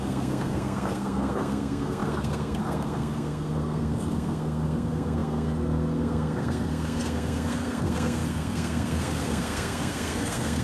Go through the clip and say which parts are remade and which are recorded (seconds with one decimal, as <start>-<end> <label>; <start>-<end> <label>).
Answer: 0.0-10.6 remade